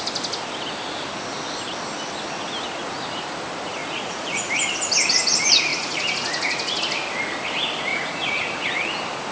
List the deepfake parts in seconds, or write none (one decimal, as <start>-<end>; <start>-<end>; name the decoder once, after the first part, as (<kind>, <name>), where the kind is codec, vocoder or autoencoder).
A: 3.8-4.5 (vocoder, Vocos); 5.7-6.8; 7.9-8.5